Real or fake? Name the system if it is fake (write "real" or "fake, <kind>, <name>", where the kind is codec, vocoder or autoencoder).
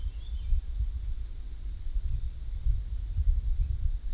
real